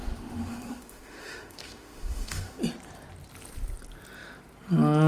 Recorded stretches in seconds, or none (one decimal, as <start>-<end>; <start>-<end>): 2.6-5.1